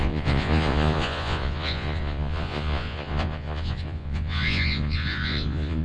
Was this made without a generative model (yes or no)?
no